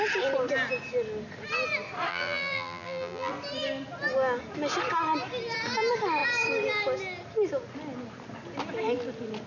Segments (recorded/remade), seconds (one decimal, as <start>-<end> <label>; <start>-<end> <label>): 0.0-2.1 recorded; 2.1-3.3 remade; 3.3-9.5 recorded